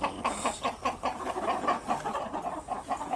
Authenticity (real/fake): real